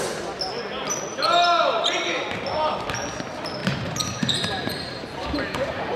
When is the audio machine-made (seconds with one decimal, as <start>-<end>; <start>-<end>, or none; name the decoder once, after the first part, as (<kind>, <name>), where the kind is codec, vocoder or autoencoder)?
3.6-6.0 (vocoder, BigVGAN v2)